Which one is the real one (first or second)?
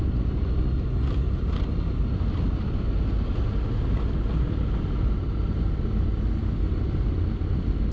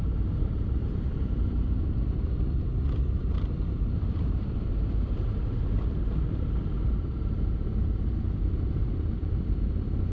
first